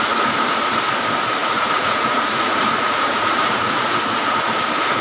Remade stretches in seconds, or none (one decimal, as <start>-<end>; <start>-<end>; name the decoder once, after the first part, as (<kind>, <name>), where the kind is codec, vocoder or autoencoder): 1.4-4.4 (vocoder, Vocos)